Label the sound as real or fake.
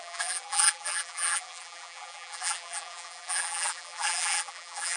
fake